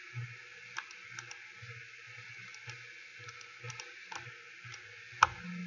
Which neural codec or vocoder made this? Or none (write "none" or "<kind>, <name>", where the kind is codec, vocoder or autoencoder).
none